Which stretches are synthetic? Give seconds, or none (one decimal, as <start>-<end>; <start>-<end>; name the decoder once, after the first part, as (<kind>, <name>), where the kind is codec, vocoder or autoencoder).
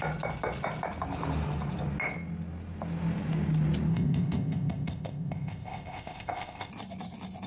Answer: 3.9-6.7 (codec, ZipCodec)